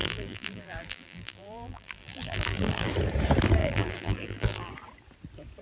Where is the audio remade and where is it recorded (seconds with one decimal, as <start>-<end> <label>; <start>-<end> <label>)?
0.0-2.9 remade; 2.9-3.6 recorded; 3.6-4.7 remade; 4.7-5.6 recorded